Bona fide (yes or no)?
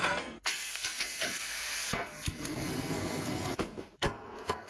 no